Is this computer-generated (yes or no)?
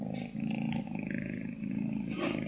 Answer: no